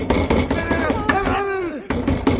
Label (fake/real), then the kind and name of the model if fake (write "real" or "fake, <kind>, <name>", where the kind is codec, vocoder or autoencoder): real